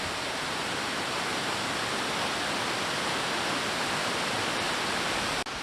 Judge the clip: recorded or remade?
recorded